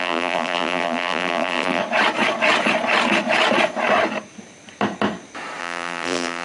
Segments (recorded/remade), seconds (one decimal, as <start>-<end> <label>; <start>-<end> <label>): 0.0-1.8 remade; 1.8-5.6 recorded; 5.6-6.4 remade